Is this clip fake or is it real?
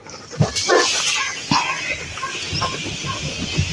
real